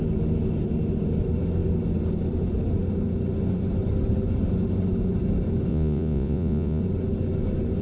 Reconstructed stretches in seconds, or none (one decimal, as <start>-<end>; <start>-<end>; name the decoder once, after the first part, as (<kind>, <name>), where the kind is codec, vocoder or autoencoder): 5.7-6.8 (vocoder, Vocos)